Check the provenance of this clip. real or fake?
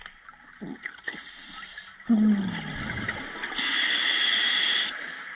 real